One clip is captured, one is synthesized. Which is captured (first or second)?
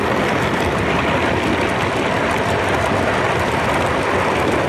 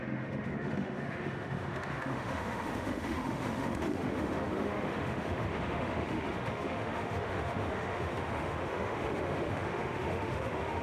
first